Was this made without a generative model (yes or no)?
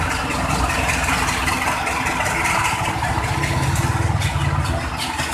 yes